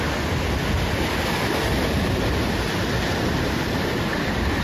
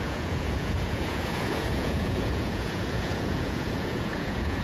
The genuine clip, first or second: first